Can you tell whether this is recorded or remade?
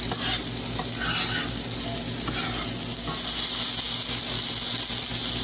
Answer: recorded